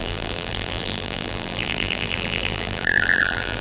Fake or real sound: fake